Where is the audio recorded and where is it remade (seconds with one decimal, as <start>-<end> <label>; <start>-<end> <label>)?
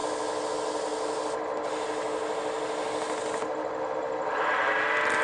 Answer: 0.0-5.2 recorded